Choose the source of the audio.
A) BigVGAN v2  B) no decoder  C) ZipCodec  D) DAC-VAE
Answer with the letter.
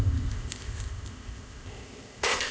C